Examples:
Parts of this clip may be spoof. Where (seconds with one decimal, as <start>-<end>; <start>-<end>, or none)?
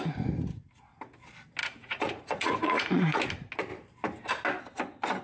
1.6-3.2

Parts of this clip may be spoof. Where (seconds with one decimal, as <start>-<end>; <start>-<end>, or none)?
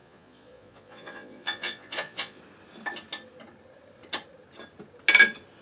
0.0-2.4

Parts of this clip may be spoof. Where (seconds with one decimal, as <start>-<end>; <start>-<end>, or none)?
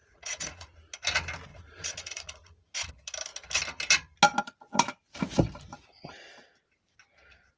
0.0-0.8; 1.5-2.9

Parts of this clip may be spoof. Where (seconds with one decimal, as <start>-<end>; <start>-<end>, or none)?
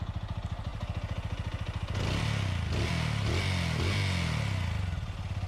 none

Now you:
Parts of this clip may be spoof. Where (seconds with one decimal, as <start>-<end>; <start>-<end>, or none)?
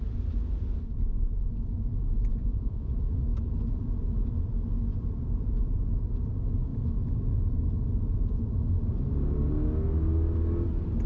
2.4-2.9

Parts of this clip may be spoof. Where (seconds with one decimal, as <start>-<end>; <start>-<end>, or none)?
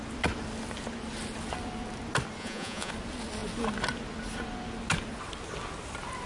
2.4-2.9